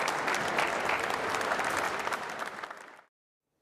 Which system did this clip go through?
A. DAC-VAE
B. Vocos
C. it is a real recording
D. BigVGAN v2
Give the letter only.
C